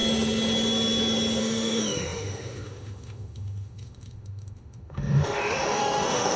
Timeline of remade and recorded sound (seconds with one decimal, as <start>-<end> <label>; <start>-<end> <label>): 0.0-1.4 recorded; 1.4-6.4 remade